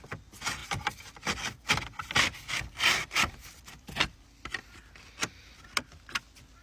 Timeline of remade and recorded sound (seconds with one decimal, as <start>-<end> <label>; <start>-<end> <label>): 0.0-6.6 recorded